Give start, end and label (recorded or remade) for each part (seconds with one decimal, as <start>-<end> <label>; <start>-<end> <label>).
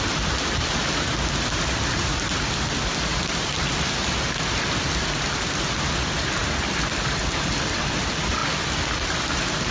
0.0-9.7 recorded